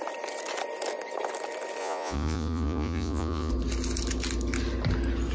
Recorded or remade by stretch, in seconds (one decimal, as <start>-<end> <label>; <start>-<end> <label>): 0.0-1.8 recorded; 1.8-3.5 remade; 3.5-5.3 recorded